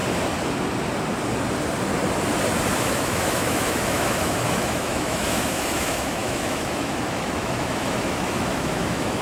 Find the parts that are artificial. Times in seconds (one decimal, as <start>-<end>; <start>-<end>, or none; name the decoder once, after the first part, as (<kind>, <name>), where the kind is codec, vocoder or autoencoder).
2.8-9.2 (autoencoder, DAC-VAE)